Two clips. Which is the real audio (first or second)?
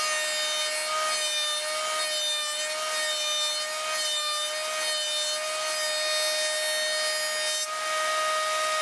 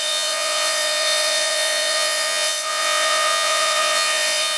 first